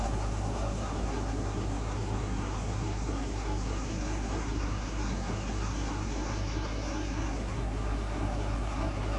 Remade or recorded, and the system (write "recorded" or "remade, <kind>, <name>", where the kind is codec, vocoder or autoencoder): remade, codec, SNAC